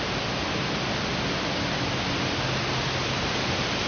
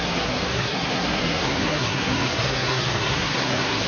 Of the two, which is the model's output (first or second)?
second